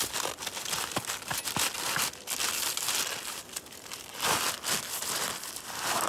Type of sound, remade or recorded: recorded